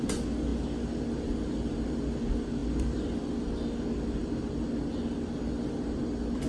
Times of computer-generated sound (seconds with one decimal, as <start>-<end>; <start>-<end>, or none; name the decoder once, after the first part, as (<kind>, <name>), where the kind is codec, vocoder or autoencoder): 2.6-3.3 (vocoder, BigVGAN v2)